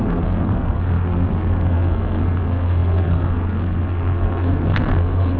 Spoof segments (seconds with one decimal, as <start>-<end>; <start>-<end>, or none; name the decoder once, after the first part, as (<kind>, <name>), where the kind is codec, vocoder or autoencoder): 0.0-5.4 (codec, SNAC)